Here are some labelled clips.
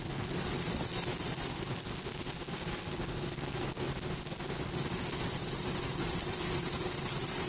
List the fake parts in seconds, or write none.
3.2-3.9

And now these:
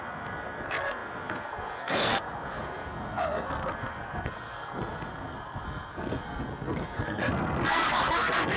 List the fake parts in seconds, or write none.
0.0-8.6

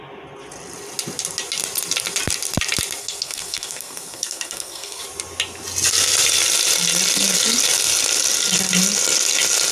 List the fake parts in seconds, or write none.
3.0-5.0